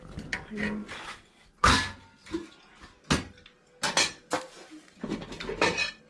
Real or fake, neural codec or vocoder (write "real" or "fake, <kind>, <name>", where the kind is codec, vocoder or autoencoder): real